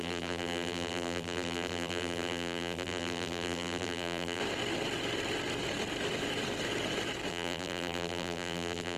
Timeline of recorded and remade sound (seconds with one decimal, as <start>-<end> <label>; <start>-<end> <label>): 0.0-4.4 remade; 4.4-7.3 recorded; 7.3-9.0 remade